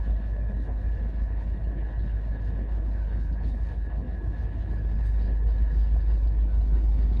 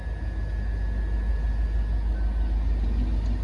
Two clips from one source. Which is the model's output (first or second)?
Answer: first